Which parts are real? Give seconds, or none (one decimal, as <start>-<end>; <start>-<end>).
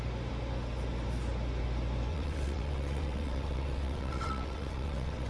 0.0-2.1